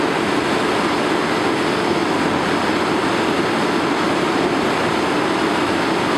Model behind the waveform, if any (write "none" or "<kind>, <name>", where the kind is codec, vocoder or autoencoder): none